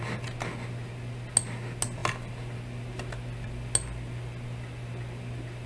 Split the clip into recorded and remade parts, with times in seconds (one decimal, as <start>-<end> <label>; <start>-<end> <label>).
0.0-5.7 recorded